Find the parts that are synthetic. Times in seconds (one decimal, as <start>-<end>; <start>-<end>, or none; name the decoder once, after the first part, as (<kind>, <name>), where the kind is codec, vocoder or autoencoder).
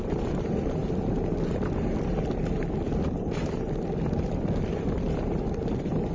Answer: none